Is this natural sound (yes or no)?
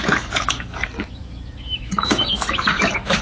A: no